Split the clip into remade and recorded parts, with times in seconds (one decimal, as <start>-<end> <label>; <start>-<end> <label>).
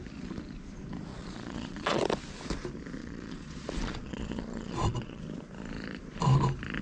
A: 0.0-1.1 recorded; 1.1-2.0 remade; 2.0-3.0 recorded; 3.0-5.2 remade; 5.2-6.8 recorded